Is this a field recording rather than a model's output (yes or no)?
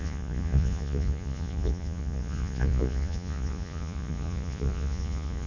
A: no